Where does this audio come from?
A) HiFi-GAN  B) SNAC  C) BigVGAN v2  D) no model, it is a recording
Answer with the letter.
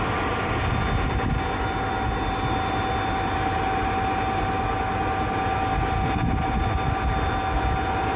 D